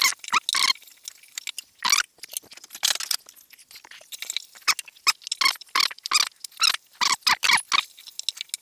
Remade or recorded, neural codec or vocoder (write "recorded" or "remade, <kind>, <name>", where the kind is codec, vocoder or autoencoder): recorded